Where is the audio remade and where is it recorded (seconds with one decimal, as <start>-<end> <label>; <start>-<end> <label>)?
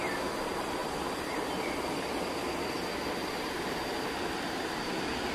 0.0-5.3 recorded